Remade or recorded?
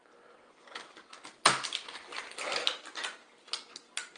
recorded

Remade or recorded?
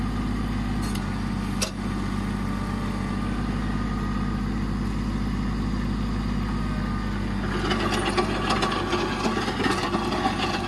recorded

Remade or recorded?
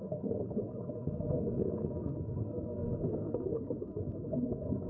remade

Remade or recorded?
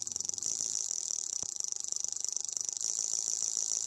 remade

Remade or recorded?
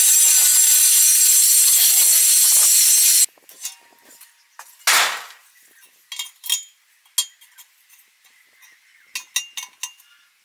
recorded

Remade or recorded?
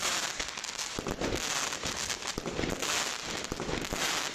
recorded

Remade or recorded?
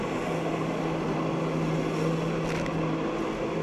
recorded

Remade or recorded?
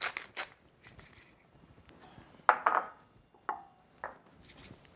recorded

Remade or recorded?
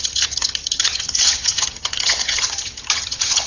remade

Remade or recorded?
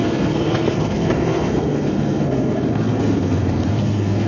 remade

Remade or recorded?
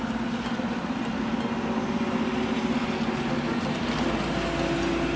recorded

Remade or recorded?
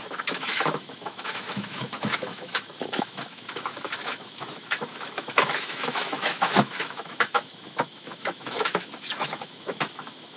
remade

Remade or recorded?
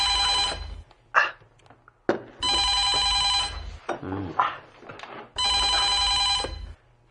recorded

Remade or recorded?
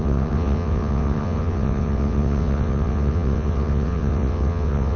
remade